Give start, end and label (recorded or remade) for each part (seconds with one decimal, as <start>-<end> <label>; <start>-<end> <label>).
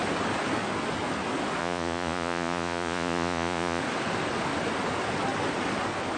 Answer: 0.0-1.6 recorded; 1.6-3.8 remade; 3.8-6.2 recorded